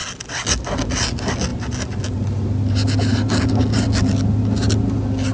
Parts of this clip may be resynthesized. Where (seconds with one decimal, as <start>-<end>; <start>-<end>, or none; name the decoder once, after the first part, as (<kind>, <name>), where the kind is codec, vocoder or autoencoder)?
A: none